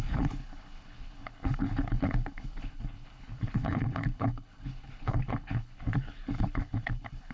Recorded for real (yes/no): no